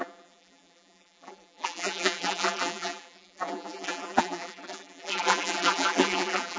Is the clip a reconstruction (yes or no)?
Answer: yes